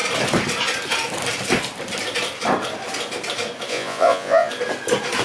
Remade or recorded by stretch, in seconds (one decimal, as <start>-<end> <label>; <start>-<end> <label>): 0.0-3.7 recorded; 3.7-4.5 remade; 4.5-5.2 recorded